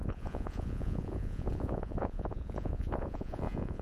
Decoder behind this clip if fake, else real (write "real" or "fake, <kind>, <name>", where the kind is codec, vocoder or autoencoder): fake, vocoder, Vocos